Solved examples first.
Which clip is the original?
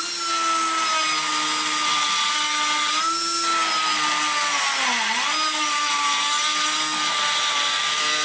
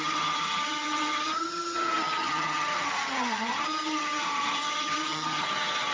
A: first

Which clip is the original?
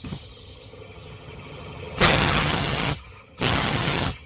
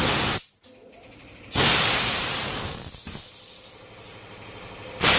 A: second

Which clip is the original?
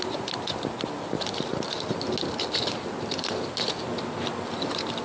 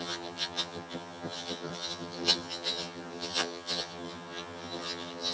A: first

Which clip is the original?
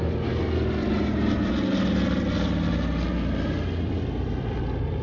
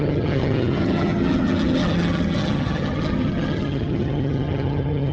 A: first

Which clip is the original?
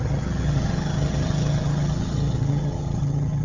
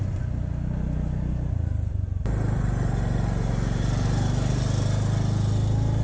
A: second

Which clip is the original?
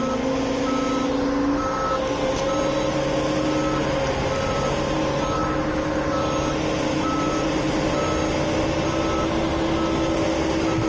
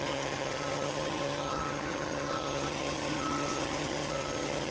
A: first